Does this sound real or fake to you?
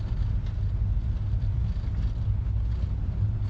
real